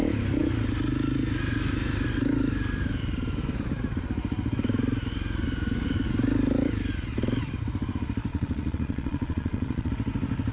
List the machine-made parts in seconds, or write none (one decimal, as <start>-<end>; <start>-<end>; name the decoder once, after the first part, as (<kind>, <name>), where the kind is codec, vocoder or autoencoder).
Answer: 8.3-9.9 (vocoder, Vocos)